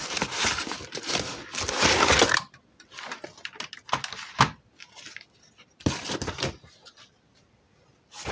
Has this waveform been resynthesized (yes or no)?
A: no